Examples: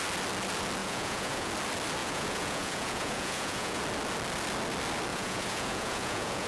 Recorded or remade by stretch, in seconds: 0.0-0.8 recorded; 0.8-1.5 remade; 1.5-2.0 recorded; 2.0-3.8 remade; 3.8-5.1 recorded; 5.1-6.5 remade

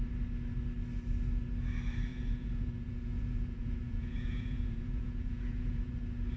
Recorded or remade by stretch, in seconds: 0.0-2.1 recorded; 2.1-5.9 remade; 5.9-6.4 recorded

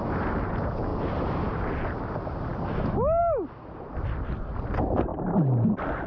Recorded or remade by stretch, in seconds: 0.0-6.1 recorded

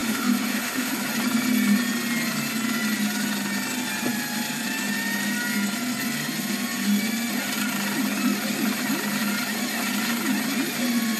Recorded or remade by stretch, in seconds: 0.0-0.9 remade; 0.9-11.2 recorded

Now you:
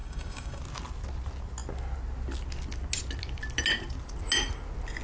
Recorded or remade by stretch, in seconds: 0.0-0.6 remade; 0.6-5.0 recorded